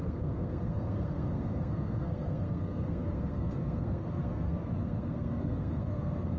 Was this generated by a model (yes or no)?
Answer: yes